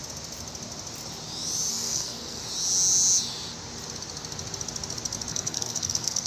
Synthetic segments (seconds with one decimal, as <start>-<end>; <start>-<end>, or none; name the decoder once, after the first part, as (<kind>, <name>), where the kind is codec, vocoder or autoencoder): 1.7-2.4 (codec, SNAC); 5.3-6.3